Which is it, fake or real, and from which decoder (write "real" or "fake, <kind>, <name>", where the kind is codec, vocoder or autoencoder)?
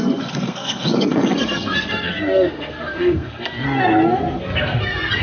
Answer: fake, codec, SNAC